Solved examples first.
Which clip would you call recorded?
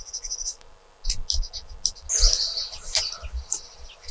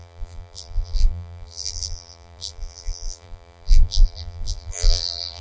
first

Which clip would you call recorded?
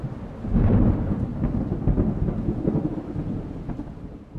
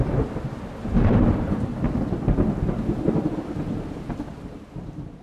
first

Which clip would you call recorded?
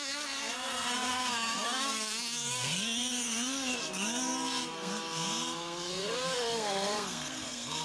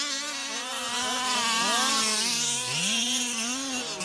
second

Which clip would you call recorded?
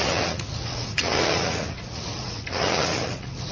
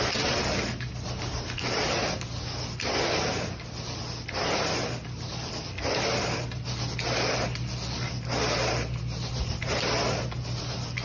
second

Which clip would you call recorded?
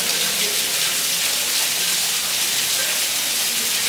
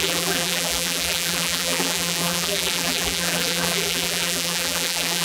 first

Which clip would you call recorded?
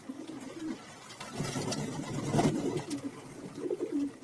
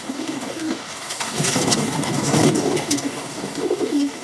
first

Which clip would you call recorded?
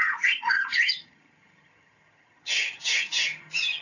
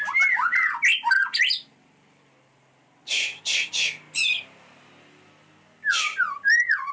second